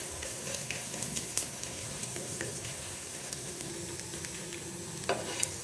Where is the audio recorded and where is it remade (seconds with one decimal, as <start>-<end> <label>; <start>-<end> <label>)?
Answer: 0.0-3.7 remade; 3.7-5.6 recorded

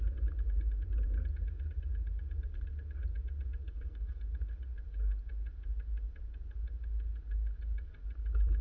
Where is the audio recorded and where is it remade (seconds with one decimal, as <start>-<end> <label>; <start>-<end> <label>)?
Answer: 0.0-3.6 recorded; 3.6-4.2 remade; 4.2-8.6 recorded

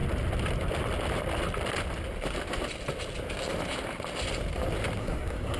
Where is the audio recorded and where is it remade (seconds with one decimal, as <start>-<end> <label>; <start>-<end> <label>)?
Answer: 0.0-5.0 recorded; 5.0-5.6 remade

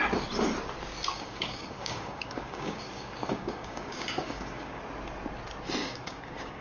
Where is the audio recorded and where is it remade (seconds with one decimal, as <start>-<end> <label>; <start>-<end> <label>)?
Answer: 0.0-1.1 recorded; 1.1-4.8 remade; 4.8-5.8 recorded; 5.8-6.6 remade

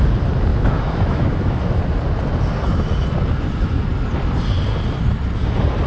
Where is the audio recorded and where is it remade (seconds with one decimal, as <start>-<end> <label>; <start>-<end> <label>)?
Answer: 0.0-0.5 recorded; 0.5-1.6 remade; 1.6-5.9 recorded

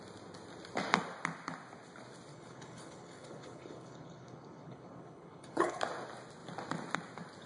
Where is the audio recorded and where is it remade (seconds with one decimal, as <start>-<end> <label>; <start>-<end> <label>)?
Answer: 0.0-2.3 recorded; 2.3-5.8 remade; 5.8-7.5 recorded

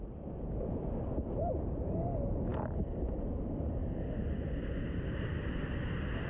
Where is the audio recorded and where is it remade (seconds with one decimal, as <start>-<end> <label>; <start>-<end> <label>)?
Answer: 0.0-3.8 remade; 3.8-4.5 recorded; 4.5-6.3 remade

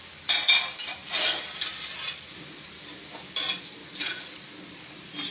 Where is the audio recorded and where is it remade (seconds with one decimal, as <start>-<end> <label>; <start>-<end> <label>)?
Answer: 0.0-5.3 recorded